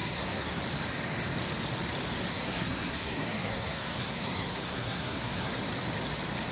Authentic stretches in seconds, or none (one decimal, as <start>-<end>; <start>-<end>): 0.6-2.3; 5.5-6.5